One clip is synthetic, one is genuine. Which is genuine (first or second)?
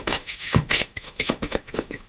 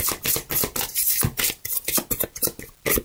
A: second